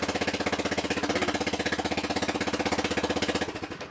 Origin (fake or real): real